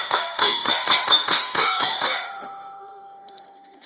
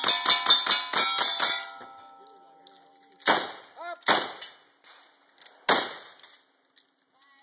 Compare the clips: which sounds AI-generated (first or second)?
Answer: first